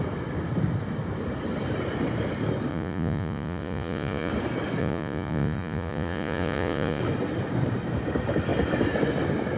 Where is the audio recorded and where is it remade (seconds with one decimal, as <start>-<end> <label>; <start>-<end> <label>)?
0.0-2.7 recorded; 2.7-4.3 remade; 4.3-4.8 recorded; 4.8-7.0 remade; 7.0-9.6 recorded